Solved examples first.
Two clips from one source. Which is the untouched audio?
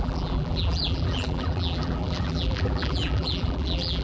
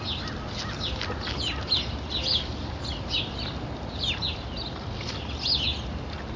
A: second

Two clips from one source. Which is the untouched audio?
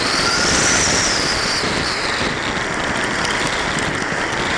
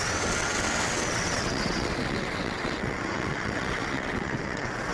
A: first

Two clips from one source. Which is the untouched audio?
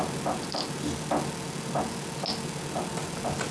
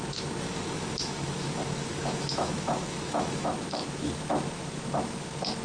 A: first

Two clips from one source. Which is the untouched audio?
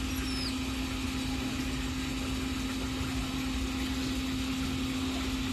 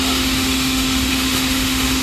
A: first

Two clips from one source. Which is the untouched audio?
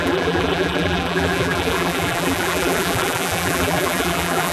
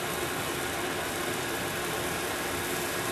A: second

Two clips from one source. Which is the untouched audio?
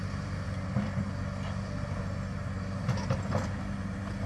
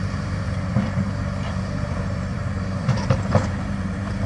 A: first